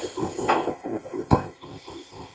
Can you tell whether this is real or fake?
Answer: fake